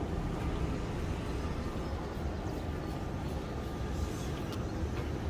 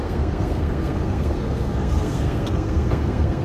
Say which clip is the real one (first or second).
first